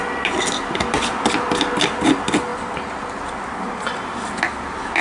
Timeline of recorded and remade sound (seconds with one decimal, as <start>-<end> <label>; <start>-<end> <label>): 0.0-5.0 recorded